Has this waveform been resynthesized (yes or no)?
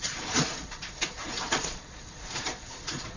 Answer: yes